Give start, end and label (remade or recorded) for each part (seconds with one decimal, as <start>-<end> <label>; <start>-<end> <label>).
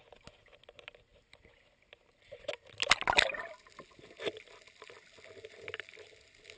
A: 0.0-6.6 recorded